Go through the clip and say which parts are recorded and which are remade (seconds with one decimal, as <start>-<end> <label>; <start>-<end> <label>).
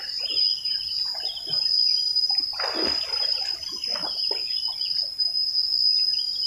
0.0-6.5 recorded